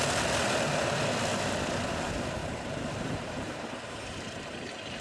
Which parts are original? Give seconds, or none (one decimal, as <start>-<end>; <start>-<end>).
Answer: 0.0-0.4; 1.0-2.4